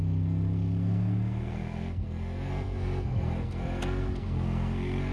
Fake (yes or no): yes